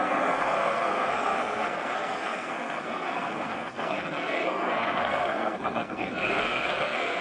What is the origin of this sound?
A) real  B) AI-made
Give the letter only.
B